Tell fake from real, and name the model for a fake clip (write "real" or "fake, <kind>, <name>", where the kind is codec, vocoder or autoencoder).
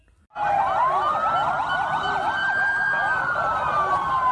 real